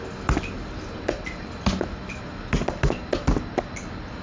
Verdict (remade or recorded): recorded